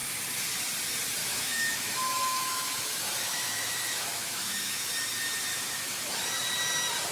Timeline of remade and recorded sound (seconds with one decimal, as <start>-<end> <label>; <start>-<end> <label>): 0.0-1.2 recorded; 1.2-4.9 remade; 4.9-5.5 recorded; 5.5-6.1 remade; 6.1-7.1 recorded